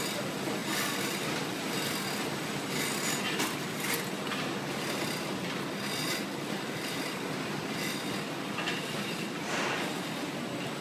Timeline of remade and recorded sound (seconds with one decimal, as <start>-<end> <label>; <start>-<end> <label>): 0.0-10.8 recorded